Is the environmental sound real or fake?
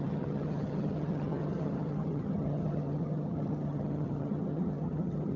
fake